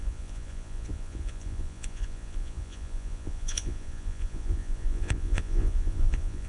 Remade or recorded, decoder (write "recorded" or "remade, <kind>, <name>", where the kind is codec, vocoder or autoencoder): remade, vocoder, Vocos